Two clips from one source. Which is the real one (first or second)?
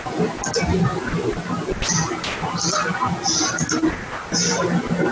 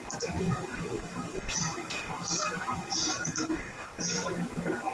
first